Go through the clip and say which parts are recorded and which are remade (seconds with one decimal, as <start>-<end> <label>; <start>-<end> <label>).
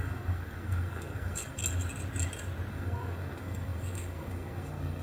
0.0-1.6 remade; 1.6-2.7 recorded; 2.7-5.0 remade